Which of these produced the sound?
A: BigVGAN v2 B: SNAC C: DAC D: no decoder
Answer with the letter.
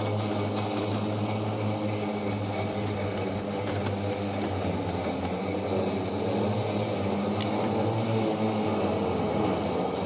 D